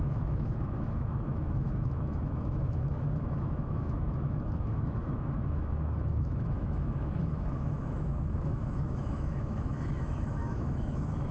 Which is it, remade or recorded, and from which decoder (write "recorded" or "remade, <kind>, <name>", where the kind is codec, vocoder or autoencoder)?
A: remade, autoencoder, DAC-VAE